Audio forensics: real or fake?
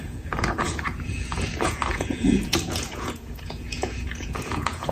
fake